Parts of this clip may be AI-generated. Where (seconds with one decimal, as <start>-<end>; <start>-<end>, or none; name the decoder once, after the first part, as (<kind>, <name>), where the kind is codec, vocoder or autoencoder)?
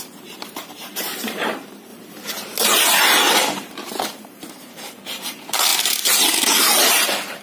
0.0-7.4 (vocoder, BigVGAN v2)